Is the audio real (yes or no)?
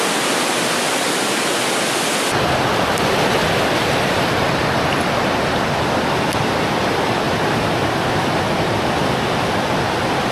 yes